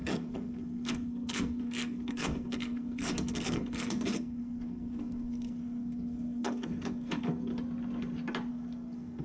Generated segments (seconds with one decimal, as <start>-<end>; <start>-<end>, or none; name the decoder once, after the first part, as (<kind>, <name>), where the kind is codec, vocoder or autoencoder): 0.0-7.5 (codec, SNAC); 8.5-9.2